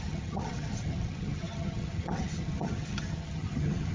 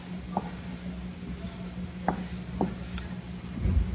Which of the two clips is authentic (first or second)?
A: second